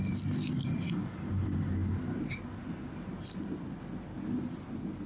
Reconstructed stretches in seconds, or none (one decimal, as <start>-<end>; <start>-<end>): 0.0-1.8